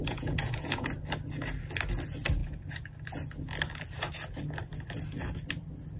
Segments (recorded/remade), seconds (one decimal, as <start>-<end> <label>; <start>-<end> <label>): 0.0-0.9 remade; 0.9-6.0 recorded